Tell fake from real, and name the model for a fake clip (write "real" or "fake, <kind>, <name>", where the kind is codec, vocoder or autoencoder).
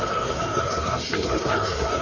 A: fake, codec, SNAC